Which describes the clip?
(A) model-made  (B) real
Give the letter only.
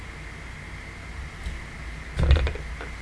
B